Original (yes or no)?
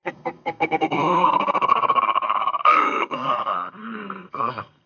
no